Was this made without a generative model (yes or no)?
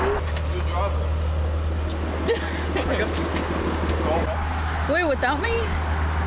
yes